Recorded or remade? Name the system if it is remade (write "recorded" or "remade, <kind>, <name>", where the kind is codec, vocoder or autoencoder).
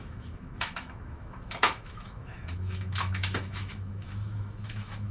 remade, autoencoder, DAC-VAE